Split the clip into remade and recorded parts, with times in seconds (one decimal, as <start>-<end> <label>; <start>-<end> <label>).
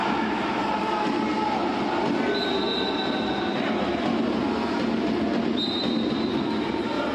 0.0-0.7 remade; 0.7-7.1 recorded